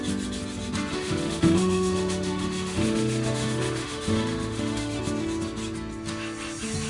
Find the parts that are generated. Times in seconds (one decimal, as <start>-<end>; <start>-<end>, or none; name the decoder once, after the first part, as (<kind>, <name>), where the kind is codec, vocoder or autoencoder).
0.9-5.0 (autoencoder, DAC-VAE)